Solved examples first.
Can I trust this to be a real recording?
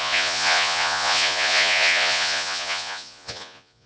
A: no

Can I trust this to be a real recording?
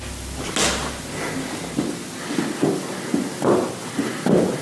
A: yes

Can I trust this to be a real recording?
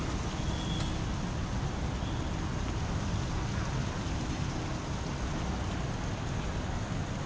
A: yes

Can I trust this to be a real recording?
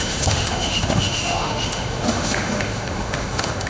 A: no